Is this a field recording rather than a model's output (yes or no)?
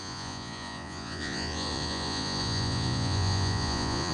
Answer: no